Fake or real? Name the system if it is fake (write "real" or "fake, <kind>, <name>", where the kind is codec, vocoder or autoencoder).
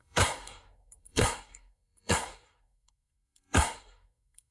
fake, codec, SNAC